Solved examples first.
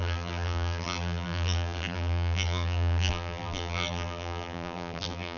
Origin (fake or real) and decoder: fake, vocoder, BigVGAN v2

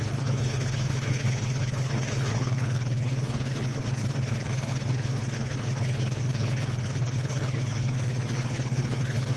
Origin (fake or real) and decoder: fake, codec, HILCodec